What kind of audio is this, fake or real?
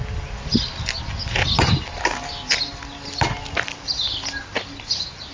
real